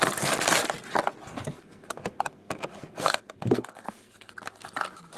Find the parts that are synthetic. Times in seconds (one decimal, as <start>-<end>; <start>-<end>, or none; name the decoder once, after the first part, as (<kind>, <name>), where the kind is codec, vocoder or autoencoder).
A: 1.2-4.3 (codec, SNAC)